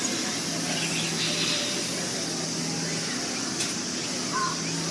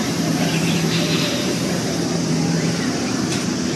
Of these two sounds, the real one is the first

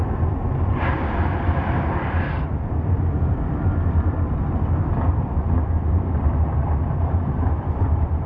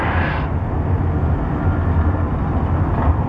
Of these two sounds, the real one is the second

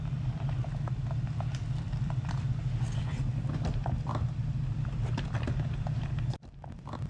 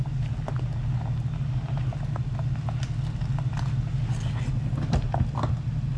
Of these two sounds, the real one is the second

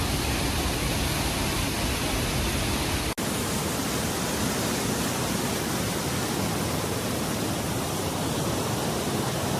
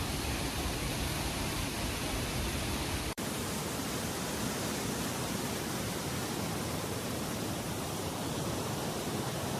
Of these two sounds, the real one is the first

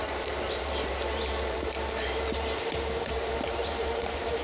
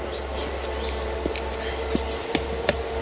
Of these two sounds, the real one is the second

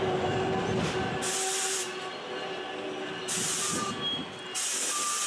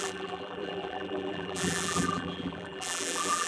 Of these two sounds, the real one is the first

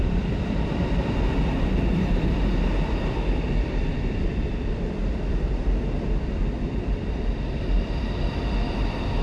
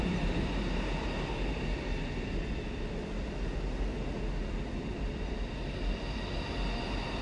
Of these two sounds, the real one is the second